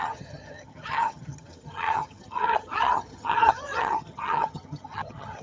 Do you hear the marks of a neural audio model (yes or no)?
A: yes